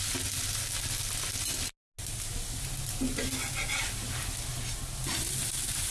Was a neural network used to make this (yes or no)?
no